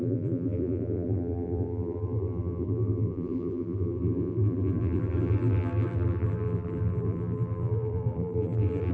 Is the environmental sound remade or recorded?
remade